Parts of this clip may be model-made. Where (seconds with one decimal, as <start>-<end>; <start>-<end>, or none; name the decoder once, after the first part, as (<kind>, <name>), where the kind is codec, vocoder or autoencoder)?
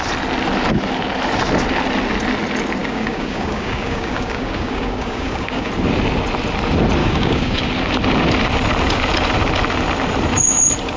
2.8-5.7 (codec, DAC); 7.0-7.6